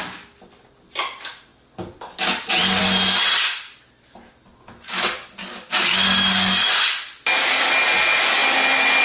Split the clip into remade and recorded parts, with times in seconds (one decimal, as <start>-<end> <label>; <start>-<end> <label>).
0.0-5.4 recorded; 5.4-6.7 remade; 6.7-9.0 recorded